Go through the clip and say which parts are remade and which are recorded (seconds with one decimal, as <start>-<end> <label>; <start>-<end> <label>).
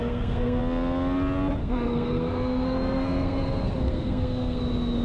0.0-0.6 remade; 0.6-1.6 recorded; 1.6-4.6 remade; 4.6-5.0 recorded